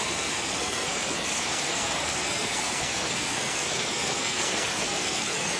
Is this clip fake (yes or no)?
yes